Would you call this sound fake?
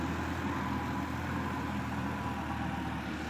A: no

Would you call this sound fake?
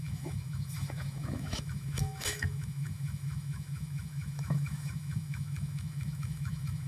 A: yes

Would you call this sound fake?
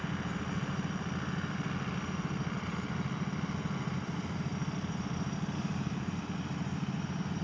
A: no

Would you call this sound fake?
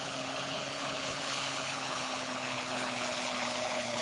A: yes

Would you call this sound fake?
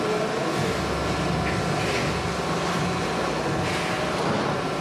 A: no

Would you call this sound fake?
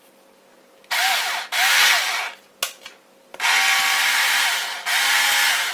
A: no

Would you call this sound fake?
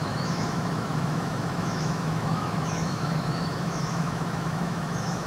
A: yes